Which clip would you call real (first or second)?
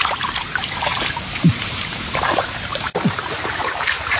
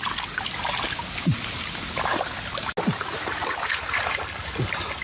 second